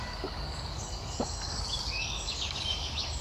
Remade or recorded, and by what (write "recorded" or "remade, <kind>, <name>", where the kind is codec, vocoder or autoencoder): remade, codec, DAC